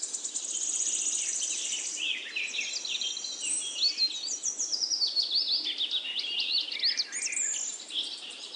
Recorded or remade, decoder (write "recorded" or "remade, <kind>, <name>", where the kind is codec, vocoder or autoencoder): recorded